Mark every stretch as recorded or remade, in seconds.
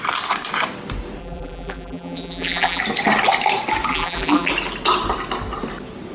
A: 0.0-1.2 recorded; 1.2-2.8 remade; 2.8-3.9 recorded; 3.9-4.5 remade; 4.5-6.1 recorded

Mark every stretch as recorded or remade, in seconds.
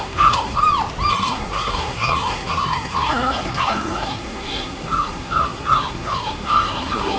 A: 0.0-0.6 remade; 0.6-1.1 recorded; 1.1-7.2 remade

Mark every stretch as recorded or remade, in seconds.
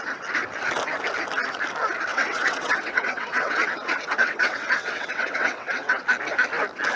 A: 0.0-2.1 recorded; 2.1-6.0 remade; 6.0-7.0 recorded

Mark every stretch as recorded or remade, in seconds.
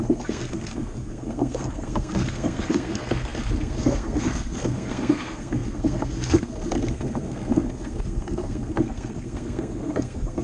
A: 0.0-10.4 remade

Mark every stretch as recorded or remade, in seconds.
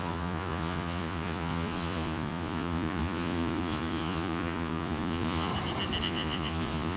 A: 0.0-5.5 remade; 5.5-6.0 recorded; 6.0-7.0 remade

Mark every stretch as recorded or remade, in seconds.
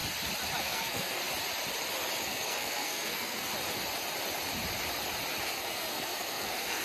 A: 0.0-0.6 recorded; 0.6-1.2 remade; 1.2-2.2 recorded; 2.2-3.5 remade; 3.5-5.5 recorded; 5.5-6.8 remade